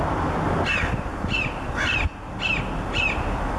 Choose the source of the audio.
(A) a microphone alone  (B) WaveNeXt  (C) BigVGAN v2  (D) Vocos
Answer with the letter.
A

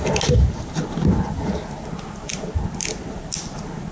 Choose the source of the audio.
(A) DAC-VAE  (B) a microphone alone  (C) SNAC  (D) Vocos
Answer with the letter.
B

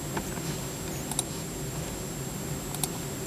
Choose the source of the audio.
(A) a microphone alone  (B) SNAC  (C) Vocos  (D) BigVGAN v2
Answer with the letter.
A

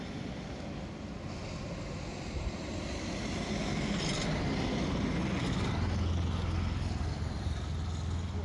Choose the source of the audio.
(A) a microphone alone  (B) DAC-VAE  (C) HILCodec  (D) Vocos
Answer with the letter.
A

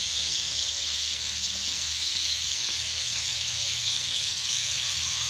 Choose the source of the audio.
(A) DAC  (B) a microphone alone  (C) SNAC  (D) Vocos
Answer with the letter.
C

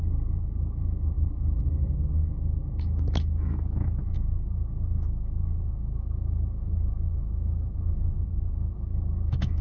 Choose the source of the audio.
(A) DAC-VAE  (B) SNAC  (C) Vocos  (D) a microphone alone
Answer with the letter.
A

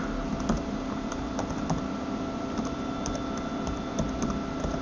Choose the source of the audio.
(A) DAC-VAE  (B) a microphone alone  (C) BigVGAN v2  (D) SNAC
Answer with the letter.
B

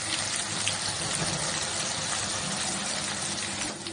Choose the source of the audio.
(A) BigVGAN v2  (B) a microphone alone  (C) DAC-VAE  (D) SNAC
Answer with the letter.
B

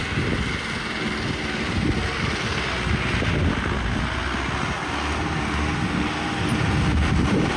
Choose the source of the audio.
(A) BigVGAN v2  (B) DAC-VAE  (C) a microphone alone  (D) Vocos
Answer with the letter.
C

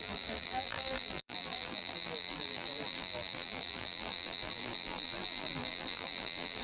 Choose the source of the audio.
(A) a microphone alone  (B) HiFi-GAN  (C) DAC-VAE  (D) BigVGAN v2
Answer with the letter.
D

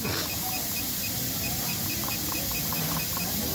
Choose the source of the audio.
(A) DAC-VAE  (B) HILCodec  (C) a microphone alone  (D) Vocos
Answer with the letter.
C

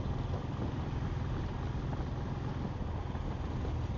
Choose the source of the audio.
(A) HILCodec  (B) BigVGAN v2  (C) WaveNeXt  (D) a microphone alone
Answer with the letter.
D